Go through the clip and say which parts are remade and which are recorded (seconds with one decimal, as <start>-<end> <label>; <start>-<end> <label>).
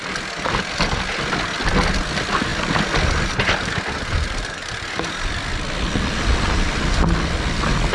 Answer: 0.0-2.5 recorded; 2.5-5.1 remade; 5.1-7.9 recorded